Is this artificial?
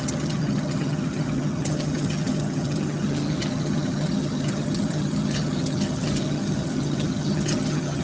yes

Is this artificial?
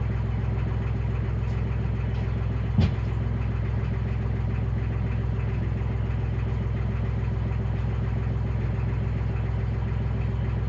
no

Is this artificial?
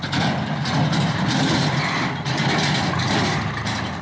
no